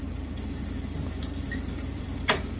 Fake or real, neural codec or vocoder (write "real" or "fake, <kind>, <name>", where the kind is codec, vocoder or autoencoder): fake, vocoder, BigVGAN v2